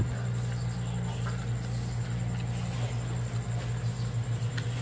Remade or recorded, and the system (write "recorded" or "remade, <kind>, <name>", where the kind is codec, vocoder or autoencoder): recorded